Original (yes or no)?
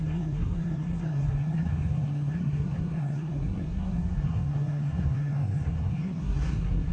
no